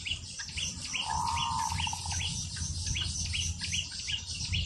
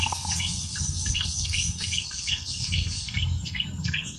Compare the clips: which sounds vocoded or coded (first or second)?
second